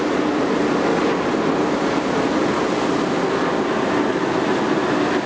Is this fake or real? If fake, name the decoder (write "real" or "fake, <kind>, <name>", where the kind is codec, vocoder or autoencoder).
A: real